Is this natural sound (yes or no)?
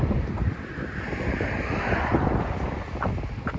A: yes